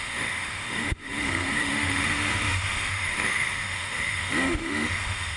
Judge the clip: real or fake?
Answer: fake